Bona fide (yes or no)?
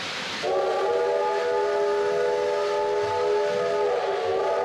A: yes